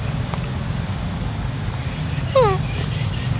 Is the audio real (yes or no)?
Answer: yes